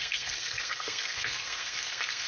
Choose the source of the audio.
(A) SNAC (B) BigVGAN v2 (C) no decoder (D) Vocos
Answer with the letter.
A